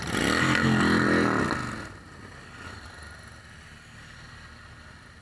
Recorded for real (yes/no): yes